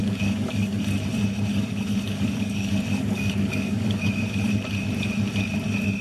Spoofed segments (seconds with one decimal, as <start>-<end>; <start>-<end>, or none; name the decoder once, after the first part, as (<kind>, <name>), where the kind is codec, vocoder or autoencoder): 0.0-0.8 (codec, DAC); 1.5-4.2